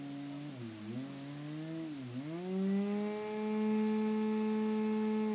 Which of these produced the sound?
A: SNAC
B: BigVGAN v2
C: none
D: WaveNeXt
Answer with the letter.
C